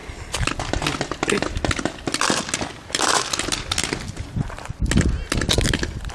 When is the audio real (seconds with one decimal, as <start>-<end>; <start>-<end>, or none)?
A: 0.0-6.1